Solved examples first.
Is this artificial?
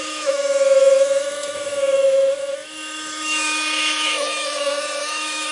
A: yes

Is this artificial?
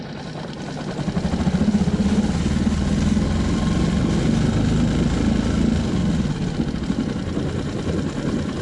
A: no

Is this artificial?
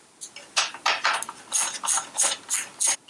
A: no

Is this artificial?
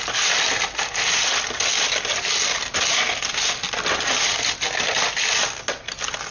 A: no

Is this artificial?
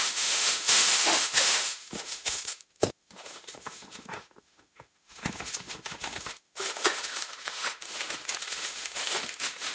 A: yes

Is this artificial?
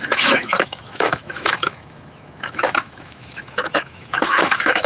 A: yes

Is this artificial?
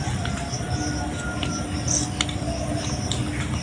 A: no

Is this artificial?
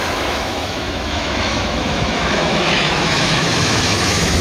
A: yes